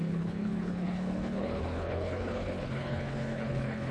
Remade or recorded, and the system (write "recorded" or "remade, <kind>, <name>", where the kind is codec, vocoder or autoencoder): remade, codec, HILCodec